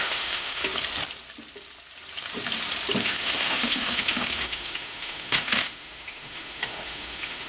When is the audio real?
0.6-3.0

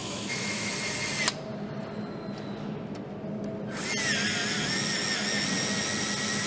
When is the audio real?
0.7-6.5

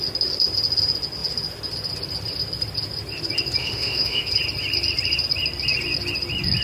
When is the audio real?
0.0-3.6; 4.3-6.6

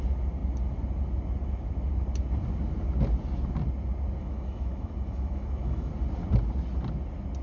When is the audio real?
0.0-4.2; 5.9-7.4

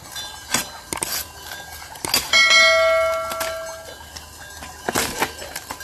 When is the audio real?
0.0-5.8

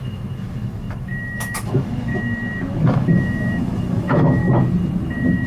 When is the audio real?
2.1-2.8; 4.4-5.5

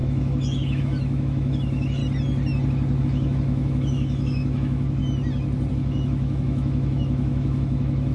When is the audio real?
2.0-3.0; 5.0-5.7